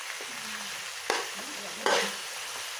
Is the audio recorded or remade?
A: recorded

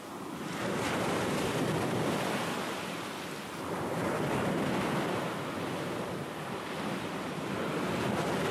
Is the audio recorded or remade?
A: recorded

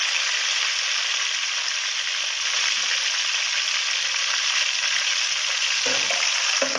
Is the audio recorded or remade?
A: recorded